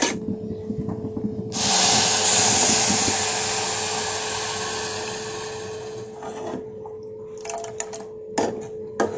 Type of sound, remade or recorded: recorded